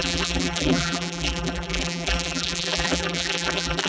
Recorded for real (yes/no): no